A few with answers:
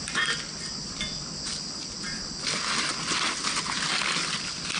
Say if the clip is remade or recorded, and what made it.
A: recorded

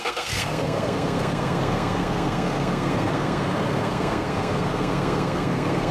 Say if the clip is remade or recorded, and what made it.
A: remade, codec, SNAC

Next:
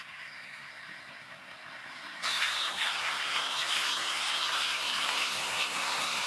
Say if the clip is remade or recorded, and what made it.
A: remade, codec, SNAC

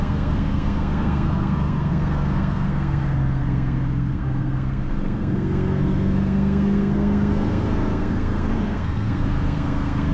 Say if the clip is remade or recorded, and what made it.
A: remade, codec, SNAC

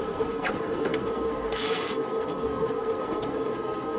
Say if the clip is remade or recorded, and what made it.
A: remade, codec, SNAC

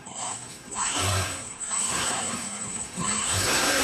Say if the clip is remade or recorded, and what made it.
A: remade, codec, SNAC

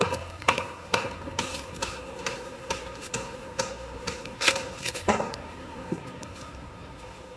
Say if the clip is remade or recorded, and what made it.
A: remade, codec, SNAC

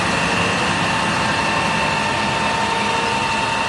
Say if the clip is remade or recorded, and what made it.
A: recorded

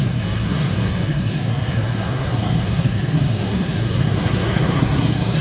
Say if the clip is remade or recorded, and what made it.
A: remade, codec, SNAC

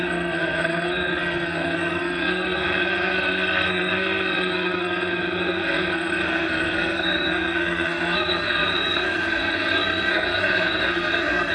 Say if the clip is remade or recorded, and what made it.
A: remade, codec, SNAC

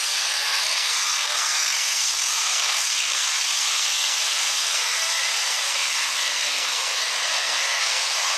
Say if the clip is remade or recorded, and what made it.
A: remade, codec, SNAC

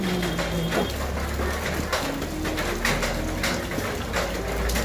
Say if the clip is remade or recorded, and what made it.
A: recorded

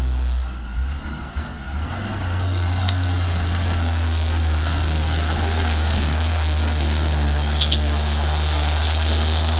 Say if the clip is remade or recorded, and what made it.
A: remade, codec, SNAC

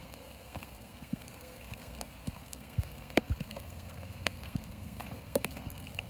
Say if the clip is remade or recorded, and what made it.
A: remade, codec, SNAC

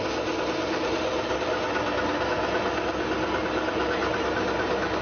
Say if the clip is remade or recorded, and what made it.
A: recorded